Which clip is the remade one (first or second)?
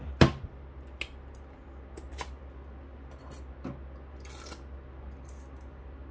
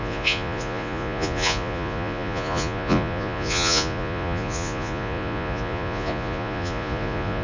second